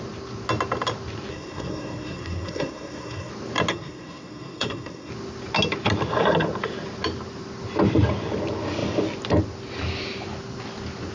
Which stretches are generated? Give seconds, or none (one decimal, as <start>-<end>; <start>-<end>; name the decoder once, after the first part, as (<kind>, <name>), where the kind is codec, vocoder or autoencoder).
1.3-3.3 (codec, SNAC); 3.7-5.1